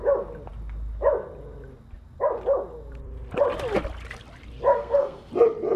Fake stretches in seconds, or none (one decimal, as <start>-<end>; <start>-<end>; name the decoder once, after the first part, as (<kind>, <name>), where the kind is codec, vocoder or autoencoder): 4.7-5.3 (codec, SNAC)